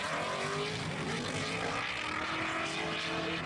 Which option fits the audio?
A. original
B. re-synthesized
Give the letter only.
A